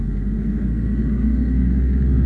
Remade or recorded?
remade